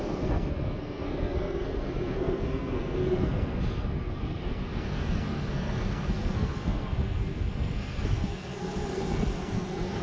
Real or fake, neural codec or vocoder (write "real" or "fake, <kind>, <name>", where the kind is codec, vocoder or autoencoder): fake, codec, SNAC